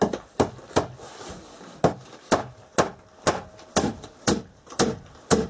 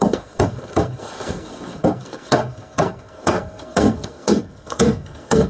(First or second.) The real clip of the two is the first